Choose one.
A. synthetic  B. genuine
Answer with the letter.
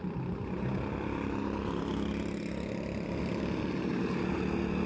B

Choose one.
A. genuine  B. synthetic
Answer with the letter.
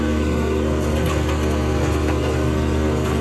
B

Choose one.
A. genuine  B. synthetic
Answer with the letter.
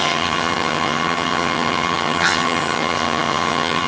B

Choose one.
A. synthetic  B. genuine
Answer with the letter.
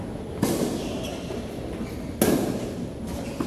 B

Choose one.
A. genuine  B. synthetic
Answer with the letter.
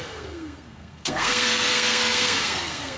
B